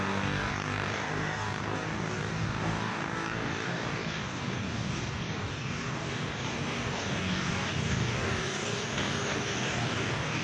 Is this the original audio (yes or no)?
no